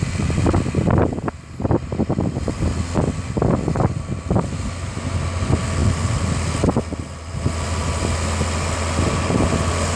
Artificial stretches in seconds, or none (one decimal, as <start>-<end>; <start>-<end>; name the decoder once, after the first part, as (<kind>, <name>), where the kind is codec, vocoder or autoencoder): none

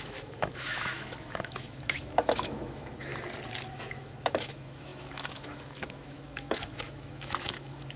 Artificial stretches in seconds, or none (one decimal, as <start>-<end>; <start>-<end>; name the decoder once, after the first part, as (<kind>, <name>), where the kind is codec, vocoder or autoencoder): 0.0-3.1 (autoencoder, DAC-VAE); 3.7-8.0

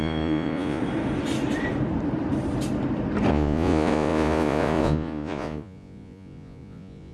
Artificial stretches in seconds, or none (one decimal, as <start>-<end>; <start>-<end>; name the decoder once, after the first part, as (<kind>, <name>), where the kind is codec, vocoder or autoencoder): 0.0-0.8 (vocoder, Vocos); 3.3-7.1

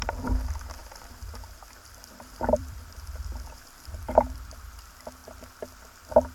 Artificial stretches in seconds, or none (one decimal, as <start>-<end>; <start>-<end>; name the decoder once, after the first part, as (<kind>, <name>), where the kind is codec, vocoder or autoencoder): 0.8-4.6 (vocoder, BigVGAN v2)

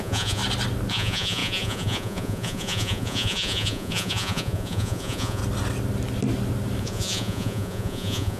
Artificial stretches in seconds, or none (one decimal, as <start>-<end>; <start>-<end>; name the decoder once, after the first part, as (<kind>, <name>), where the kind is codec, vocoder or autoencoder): 0.0-0.4 (vocoder, Vocos); 0.9-5.4; 6.8-8.4

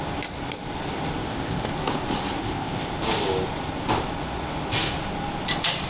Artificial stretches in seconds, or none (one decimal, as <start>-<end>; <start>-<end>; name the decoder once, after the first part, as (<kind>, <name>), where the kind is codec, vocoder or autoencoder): 1.2-1.7 (codec, ZipCodec); 2.4-2.9